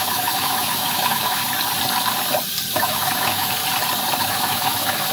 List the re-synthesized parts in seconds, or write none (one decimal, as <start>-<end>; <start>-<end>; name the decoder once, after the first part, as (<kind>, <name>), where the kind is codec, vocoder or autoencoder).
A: 0.0-1.4 (autoencoder, DAC-VAE); 2.7-3.6; 4.2-5.1